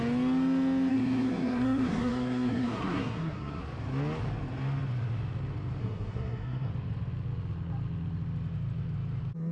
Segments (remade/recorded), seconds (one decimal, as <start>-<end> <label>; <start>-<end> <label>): 0.0-0.9 recorded; 0.9-3.6 remade; 3.6-5.8 recorded; 5.8-6.7 remade; 6.7-9.5 recorded

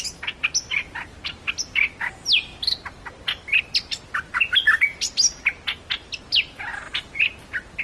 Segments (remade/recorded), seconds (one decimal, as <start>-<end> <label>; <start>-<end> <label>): 0.0-7.8 recorded

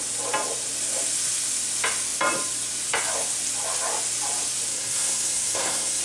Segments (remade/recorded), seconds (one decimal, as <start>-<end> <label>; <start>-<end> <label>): 0.0-4.7 recorded; 4.7-6.0 remade

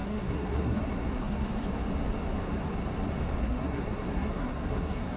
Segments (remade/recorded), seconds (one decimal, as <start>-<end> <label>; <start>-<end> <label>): 0.0-1.6 remade; 1.6-3.4 recorded; 3.4-5.2 remade

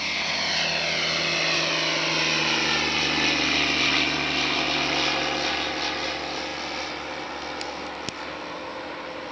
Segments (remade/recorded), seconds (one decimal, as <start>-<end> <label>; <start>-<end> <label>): 0.0-9.3 recorded

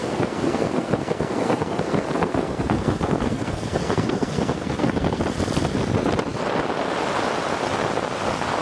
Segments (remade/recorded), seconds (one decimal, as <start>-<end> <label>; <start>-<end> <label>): 0.0-5.2 remade; 5.2-8.6 recorded